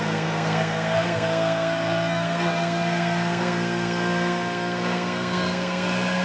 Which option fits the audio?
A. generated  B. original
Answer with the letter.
A